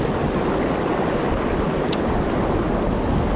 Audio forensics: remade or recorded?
recorded